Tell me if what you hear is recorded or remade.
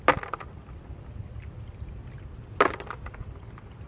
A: recorded